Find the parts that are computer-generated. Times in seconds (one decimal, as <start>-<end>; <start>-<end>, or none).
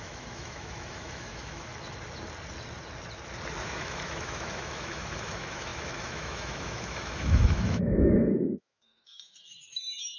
0.0-1.7; 3.6-10.2